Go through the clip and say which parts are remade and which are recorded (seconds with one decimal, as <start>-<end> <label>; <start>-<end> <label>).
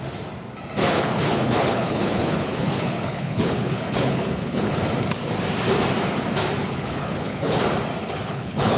0.0-0.8 recorded; 0.8-4.8 remade; 4.8-6.6 recorded; 6.6-7.6 remade; 7.6-8.0 recorded; 8.0-8.8 remade